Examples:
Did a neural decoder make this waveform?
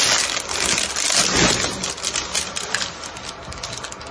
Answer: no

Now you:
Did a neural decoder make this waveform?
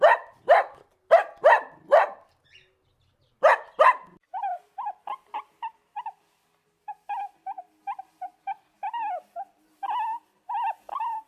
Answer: no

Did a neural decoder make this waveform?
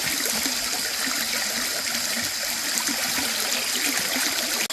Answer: no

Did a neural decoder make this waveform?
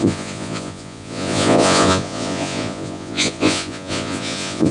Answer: yes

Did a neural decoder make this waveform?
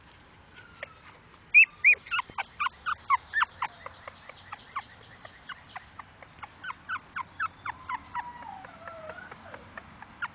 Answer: no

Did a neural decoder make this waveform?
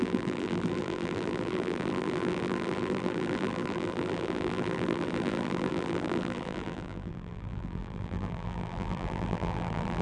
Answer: yes